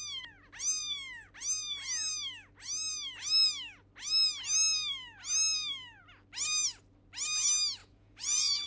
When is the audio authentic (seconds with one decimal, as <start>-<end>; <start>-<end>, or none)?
0.0-7.8